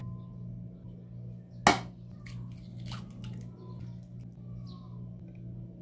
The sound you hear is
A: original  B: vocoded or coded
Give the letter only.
A